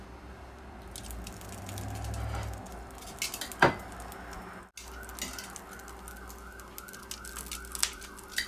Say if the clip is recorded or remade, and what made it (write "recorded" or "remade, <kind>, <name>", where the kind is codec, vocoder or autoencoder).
recorded